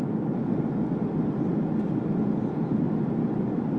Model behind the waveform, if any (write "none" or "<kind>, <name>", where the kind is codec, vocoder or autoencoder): none